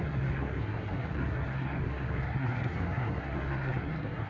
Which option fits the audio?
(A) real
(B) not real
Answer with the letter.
B